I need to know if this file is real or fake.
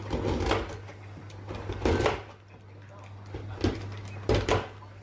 real